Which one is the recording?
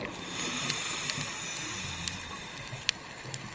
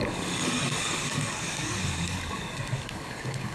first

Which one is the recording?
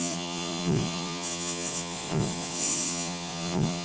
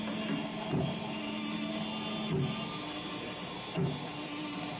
second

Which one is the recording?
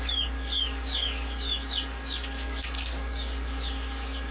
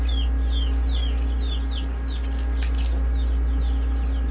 second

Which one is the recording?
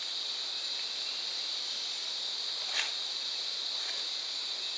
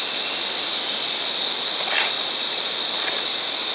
first